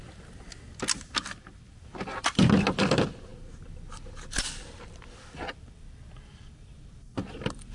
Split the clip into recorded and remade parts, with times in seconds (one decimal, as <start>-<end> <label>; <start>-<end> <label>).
0.0-7.7 recorded